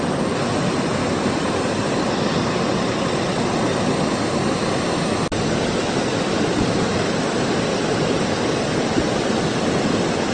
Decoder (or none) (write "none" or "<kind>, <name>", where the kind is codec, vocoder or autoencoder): none